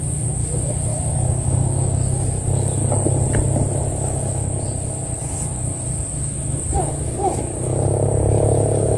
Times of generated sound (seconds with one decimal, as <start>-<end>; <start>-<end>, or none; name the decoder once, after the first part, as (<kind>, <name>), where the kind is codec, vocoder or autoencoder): 0.0-2.8 (codec, DAC); 3.9-9.0